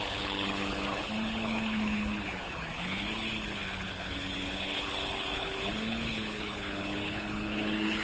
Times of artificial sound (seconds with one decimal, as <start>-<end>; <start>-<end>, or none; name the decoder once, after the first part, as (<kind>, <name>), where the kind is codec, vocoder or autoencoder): 0.0-8.0 (codec, HILCodec)